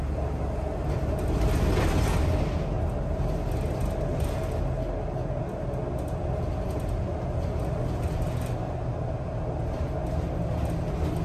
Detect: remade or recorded recorded